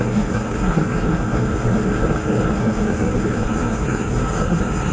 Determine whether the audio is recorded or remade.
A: remade